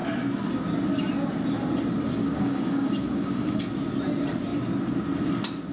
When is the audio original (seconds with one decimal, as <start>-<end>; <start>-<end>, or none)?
0.0-2.2; 3.6-5.7